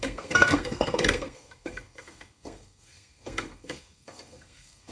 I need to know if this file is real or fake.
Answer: fake